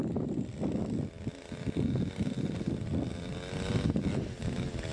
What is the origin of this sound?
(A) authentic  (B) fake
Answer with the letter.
A